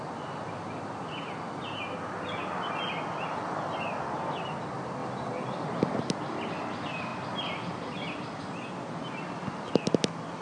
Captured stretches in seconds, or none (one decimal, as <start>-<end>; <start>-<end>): 0.0-5.0; 6.0-7.1; 8.4-10.4